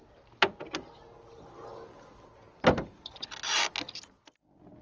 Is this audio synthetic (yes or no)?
no